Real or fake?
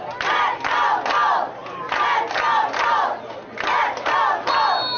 real